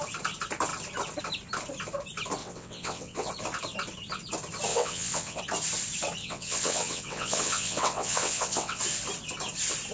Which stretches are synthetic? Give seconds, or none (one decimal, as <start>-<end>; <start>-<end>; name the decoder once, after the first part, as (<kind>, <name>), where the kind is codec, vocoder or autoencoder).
2.4-3.3 (vocoder, WaveNeXt); 4.7-5.4; 6.2-8.8